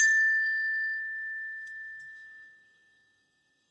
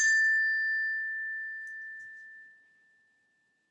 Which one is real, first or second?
second